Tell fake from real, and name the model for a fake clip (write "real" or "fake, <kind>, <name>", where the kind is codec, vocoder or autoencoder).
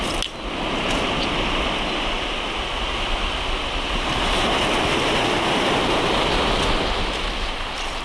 real